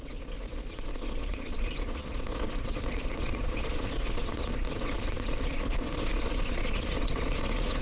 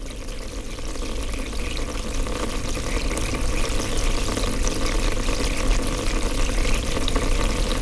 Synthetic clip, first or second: first